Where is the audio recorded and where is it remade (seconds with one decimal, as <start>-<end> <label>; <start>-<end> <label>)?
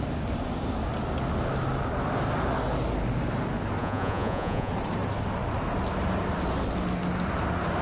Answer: 0.0-3.8 recorded; 3.8-4.7 remade; 4.7-7.8 recorded